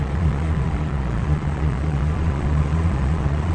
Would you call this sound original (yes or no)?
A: no